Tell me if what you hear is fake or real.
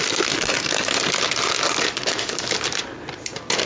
real